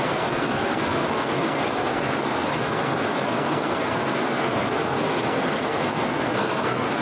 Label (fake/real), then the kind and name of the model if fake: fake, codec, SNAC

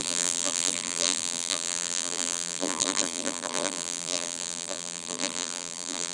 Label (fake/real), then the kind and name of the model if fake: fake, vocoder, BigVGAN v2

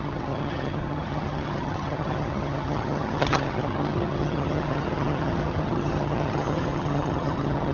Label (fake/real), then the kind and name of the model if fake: fake, vocoder, HiFi-GAN